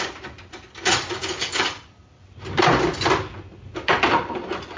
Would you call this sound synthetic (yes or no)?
no